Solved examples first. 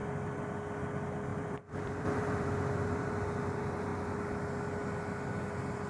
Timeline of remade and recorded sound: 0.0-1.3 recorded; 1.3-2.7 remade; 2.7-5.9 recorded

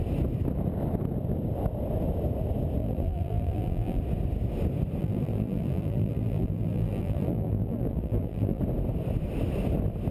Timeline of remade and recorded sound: 0.0-2.8 recorded; 2.8-4.0 remade; 4.0-5.0 recorded; 5.0-8.6 remade; 8.6-10.1 recorded

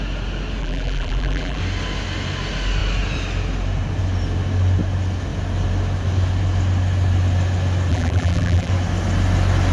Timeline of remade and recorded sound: 0.0-0.6 recorded; 0.6-1.6 remade; 1.6-7.9 recorded; 7.9-8.7 remade; 8.7-9.7 recorded

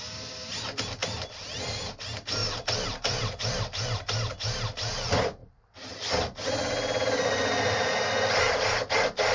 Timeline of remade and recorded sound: 0.0-1.0 recorded; 1.0-1.9 remade; 1.9-2.4 recorded; 2.4-3.6 remade; 3.6-9.3 recorded

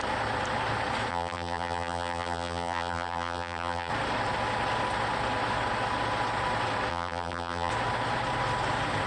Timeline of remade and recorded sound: 0.0-1.1 recorded; 1.1-3.9 remade; 3.9-6.9 recorded; 6.9-7.7 remade; 7.7-9.1 recorded

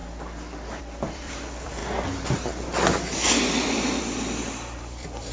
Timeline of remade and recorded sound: 0.0-0.8 recorded; 0.8-1.8 remade; 1.8-4.0 recorded; 4.0-5.3 remade